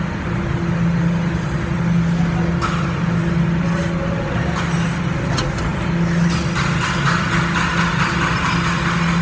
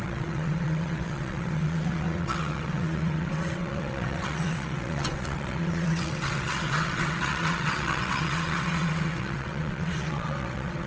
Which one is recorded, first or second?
first